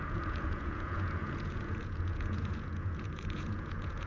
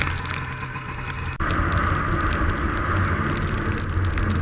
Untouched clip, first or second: second